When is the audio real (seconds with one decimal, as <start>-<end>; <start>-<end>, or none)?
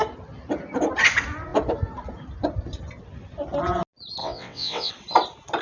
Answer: 0.0-4.2; 4.9-5.6